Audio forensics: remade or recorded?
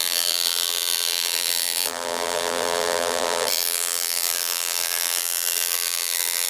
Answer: remade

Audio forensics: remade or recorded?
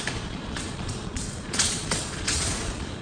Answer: remade